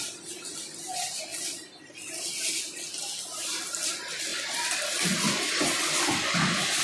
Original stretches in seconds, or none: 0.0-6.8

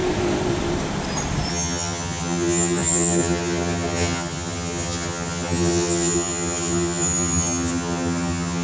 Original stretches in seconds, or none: 0.0-1.5

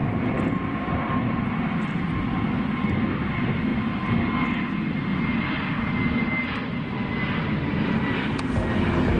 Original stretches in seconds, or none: 0.0-9.2

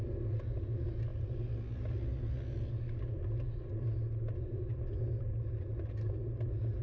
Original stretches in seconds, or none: 0.0-6.8

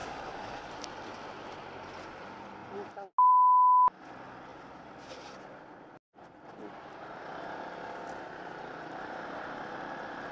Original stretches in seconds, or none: 0.7-10.3